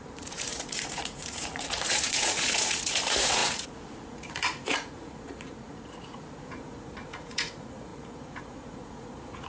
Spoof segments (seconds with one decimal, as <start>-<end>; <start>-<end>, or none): 0.0-9.5